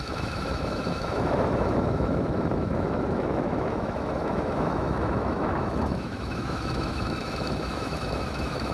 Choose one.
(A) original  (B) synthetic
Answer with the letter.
B